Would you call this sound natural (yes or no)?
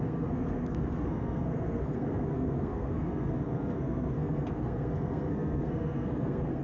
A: no